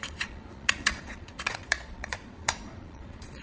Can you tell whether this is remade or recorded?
remade